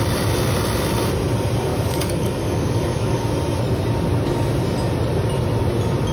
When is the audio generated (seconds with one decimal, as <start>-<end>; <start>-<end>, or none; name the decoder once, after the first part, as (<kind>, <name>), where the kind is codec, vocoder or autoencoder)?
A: 1.7-3.3 (codec, DAC)